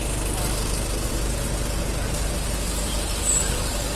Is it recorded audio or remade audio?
recorded